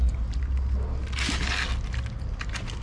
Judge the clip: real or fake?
real